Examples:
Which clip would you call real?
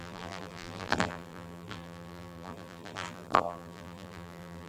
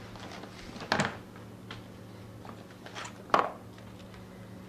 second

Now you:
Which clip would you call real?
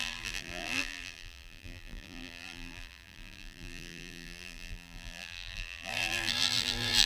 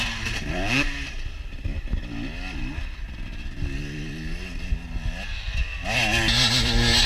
second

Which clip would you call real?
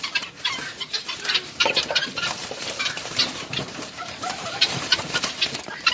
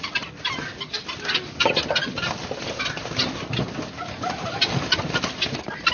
second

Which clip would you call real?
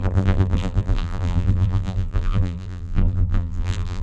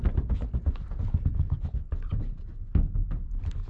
second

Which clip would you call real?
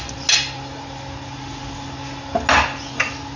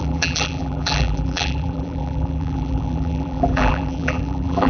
first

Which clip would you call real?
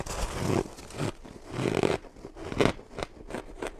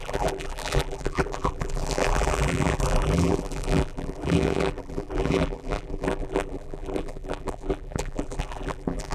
first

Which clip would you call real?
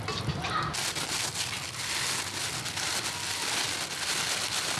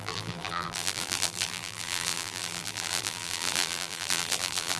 first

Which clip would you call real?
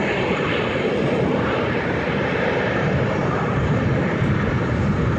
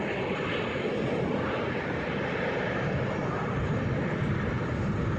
second